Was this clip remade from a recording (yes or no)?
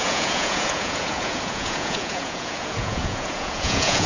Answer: yes